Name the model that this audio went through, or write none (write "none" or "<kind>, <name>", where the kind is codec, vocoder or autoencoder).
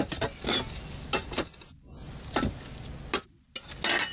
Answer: none